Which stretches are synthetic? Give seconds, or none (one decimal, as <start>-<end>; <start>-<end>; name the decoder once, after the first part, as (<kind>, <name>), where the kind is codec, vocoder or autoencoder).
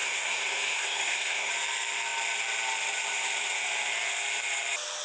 0.0-1.5 (codec, SNAC)